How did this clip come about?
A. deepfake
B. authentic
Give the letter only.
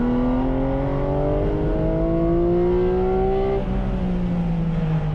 B